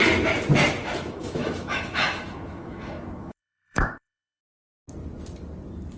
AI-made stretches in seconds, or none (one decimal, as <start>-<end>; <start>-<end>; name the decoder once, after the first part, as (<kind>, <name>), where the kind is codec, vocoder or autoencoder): 0.8-4.4 (autoencoder, DAC-VAE)